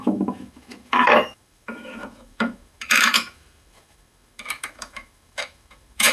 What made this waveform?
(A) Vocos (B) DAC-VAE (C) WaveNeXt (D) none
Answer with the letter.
B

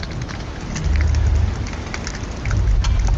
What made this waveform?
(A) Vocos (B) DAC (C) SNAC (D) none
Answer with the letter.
D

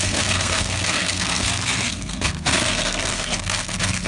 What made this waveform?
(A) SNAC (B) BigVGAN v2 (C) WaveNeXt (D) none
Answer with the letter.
A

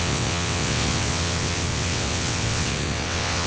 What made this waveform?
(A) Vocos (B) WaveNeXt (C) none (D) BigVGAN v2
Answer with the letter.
B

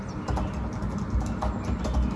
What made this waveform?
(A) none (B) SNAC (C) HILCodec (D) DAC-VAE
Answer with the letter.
A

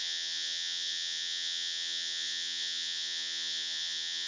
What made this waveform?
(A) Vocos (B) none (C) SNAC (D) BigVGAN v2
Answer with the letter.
A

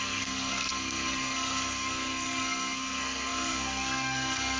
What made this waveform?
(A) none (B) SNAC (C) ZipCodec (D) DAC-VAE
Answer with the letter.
B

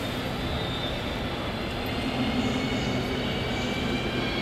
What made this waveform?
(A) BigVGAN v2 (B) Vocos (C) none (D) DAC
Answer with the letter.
C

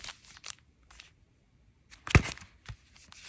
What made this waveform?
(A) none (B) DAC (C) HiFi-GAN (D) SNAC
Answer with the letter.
A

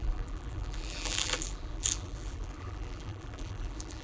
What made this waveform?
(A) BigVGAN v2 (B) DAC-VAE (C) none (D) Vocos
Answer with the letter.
A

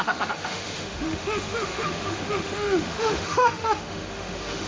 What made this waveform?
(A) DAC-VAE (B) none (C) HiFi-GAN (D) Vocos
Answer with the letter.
A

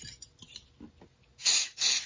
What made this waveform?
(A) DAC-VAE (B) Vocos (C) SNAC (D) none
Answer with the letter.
D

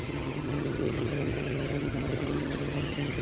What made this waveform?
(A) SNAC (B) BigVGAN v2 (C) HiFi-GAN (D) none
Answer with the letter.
C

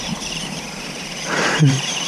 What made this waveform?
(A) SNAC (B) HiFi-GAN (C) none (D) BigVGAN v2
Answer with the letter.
D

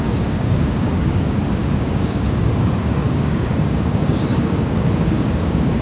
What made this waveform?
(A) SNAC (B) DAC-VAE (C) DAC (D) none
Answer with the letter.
C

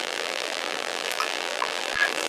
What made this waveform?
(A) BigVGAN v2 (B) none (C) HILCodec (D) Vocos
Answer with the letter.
A